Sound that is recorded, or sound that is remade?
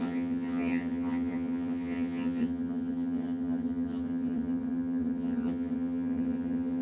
remade